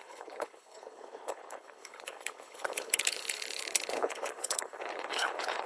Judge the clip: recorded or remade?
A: remade